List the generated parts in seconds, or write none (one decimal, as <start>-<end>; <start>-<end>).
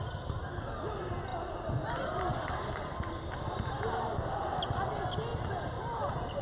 none